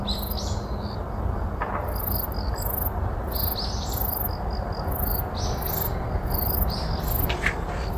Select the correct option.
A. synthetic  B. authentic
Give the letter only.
B